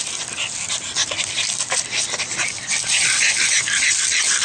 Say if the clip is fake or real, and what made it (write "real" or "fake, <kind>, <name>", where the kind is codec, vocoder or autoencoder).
real